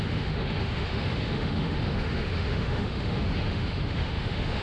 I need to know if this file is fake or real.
fake